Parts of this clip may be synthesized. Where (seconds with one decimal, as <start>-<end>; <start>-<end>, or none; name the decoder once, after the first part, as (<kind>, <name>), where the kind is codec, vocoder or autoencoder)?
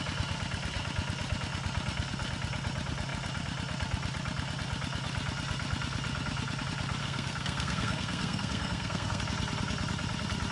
7.0-9.2 (codec, SNAC)